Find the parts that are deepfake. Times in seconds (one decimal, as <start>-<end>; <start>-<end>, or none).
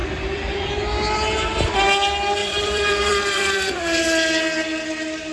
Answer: 0.0-0.7; 2.4-3.8